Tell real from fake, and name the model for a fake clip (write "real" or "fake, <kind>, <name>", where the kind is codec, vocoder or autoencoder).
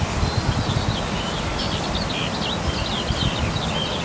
real